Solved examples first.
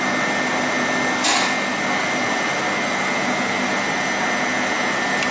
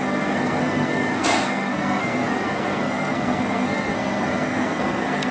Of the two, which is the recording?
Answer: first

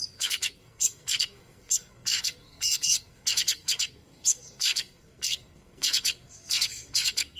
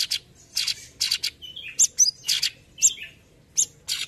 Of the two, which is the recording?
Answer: second